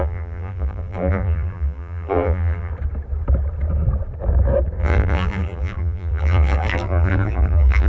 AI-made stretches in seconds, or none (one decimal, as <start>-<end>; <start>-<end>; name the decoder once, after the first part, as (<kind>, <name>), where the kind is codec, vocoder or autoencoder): 0.0-2.7 (vocoder, BigVGAN v2); 4.8-7.9